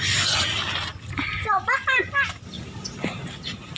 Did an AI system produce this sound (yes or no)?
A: no